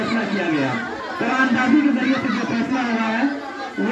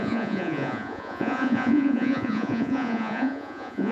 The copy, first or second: second